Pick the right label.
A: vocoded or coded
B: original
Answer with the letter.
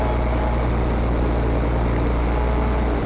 B